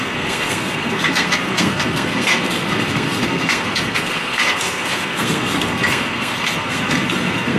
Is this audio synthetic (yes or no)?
yes